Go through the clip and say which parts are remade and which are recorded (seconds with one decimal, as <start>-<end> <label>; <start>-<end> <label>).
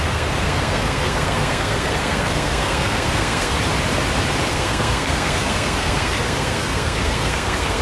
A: 0.0-3.5 remade; 3.5-4.5 recorded; 4.5-7.8 remade